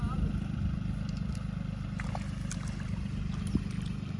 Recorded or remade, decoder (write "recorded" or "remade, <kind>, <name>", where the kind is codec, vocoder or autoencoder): recorded